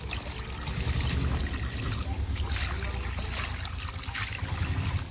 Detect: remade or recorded recorded